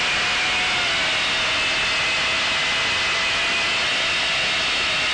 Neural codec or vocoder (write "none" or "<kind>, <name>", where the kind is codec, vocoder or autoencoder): none